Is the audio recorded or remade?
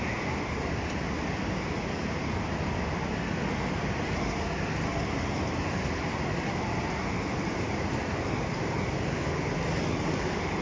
recorded